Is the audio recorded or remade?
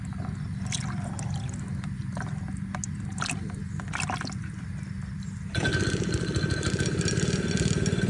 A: recorded